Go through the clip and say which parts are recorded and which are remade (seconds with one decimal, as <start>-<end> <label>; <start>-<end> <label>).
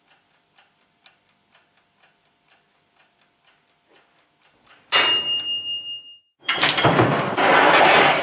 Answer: 0.0-8.2 recorded